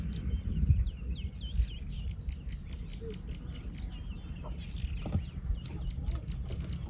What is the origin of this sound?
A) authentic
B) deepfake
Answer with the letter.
A